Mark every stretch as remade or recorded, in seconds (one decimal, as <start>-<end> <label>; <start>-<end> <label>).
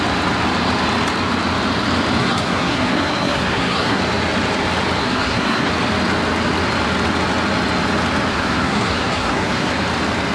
0.0-2.2 recorded; 2.2-4.0 remade; 4.0-5.0 recorded; 5.0-5.7 remade; 5.7-8.3 recorded; 8.3-9.7 remade; 9.7-10.3 recorded